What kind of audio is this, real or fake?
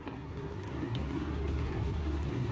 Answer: fake